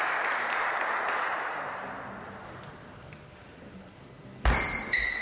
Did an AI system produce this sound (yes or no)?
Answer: no